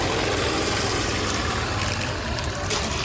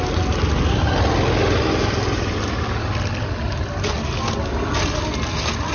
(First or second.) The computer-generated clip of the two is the first